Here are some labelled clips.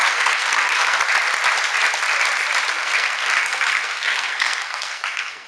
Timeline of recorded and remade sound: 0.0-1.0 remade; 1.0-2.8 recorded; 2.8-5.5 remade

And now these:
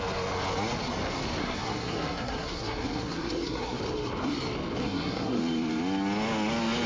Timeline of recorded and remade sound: 0.0-1.4 recorded; 1.4-3.8 remade; 3.8-4.8 recorded; 4.8-5.4 remade; 5.4-6.9 recorded

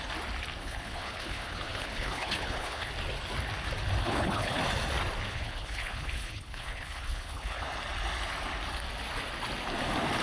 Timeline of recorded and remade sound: 0.0-0.6 recorded; 0.6-2.9 remade; 2.9-4.0 recorded; 4.0-4.6 remade; 4.6-5.3 recorded; 5.3-7.7 remade; 7.7-10.2 recorded

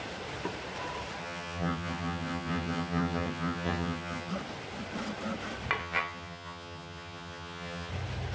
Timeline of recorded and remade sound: 0.0-1.2 recorded; 1.2-4.3 remade; 4.3-5.8 recorded; 5.8-7.9 remade; 7.9-8.3 recorded

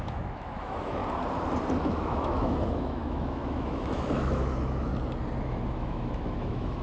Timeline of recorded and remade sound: 0.0-1.0 remade; 1.0-1.8 recorded; 1.8-4.9 remade; 4.9-5.4 recorded; 5.4-6.8 remade

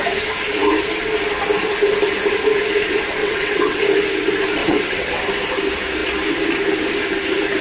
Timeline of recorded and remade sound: 0.0-3.2 recorded; 3.2-3.8 remade; 3.8-4.6 recorded; 4.6-5.2 remade; 5.2-7.6 recorded

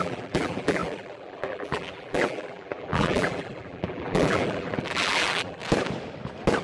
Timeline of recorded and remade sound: 0.0-5.6 remade; 5.6-6.6 recorded